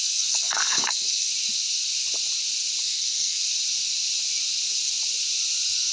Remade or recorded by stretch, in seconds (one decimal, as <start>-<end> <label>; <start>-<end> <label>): 0.0-1.3 remade; 1.3-2.8 recorded; 2.8-3.4 remade; 3.4-5.9 recorded